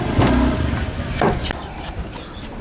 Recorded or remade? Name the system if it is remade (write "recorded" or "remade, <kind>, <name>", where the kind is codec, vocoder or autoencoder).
recorded